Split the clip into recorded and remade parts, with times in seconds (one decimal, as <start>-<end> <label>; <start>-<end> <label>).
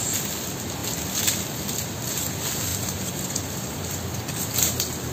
0.0-2.7 recorded; 2.7-3.7 remade; 3.7-5.1 recorded